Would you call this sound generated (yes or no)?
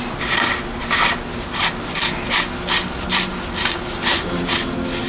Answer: no